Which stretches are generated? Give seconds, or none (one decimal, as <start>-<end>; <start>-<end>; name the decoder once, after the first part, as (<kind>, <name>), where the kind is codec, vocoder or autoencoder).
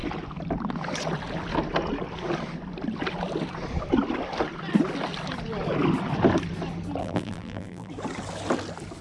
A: 7.0-7.9 (vocoder, BigVGAN v2)